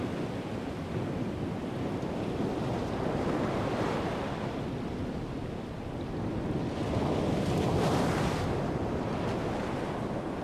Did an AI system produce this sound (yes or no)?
no